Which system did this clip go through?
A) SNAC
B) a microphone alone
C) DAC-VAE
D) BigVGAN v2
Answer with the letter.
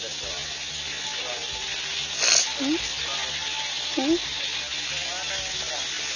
B